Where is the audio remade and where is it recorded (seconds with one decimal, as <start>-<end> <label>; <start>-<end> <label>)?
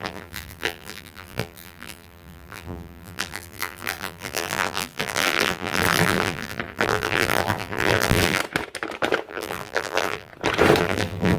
0.0-8.4 remade; 8.4-9.3 recorded; 9.3-10.3 remade; 10.3-10.8 recorded; 10.8-11.4 remade